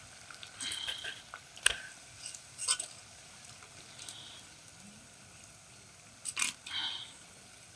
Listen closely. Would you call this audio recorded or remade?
recorded